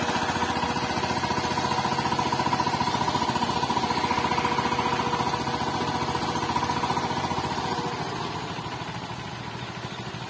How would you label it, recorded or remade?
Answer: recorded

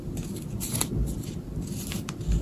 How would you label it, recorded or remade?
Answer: recorded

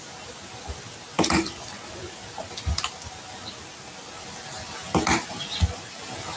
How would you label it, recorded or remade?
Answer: recorded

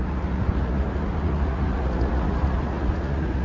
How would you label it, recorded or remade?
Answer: remade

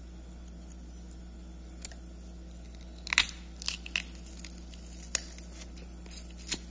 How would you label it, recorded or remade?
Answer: recorded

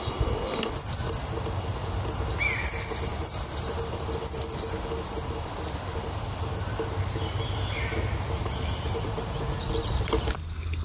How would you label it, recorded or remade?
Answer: recorded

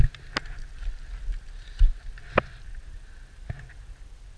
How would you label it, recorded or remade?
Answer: recorded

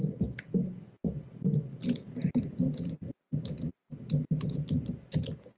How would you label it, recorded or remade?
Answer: recorded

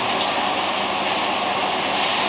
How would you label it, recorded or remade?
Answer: recorded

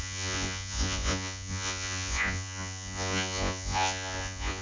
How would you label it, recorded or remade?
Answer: remade